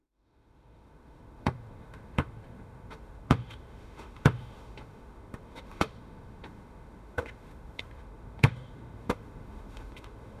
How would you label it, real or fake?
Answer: fake